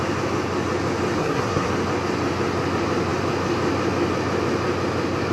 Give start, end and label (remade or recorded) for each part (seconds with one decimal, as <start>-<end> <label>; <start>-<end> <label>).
0.0-1.2 recorded; 1.2-1.7 remade; 1.7-5.3 recorded